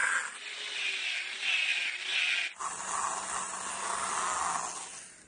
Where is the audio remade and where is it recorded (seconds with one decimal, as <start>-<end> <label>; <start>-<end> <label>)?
0.0-5.3 recorded